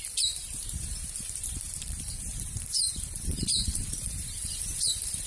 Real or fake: fake